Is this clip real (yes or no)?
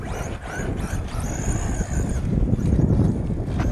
yes